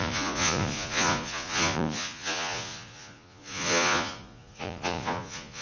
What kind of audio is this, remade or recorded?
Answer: remade